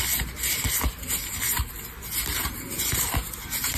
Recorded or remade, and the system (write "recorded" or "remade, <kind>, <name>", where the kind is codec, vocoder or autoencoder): recorded